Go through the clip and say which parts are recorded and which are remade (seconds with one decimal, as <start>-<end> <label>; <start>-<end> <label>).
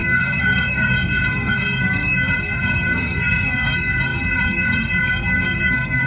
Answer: 0.0-6.1 remade